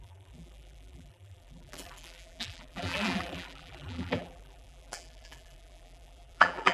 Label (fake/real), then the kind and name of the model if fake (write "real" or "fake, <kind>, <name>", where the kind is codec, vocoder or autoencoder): fake, vocoder, BigVGAN v2